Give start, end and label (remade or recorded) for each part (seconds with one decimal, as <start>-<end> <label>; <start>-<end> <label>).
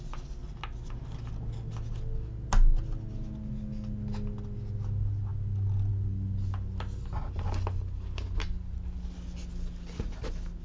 0.0-10.6 recorded